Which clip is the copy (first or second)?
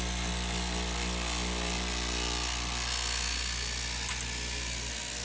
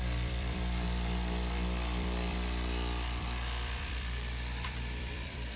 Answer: second